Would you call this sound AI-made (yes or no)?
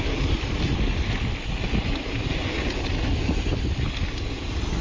no